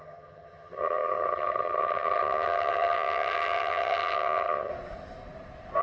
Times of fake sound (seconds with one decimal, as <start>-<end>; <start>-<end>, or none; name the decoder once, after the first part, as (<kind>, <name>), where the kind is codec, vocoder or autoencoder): 0.0-4.7 (vocoder, HiFi-GAN)